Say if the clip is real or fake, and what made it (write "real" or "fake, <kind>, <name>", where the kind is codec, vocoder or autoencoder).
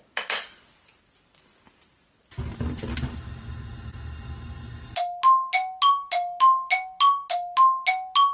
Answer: real